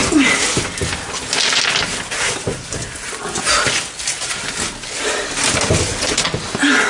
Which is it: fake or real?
real